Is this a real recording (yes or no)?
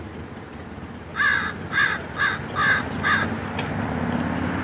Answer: yes